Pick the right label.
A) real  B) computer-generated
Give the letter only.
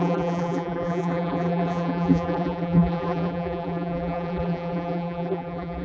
B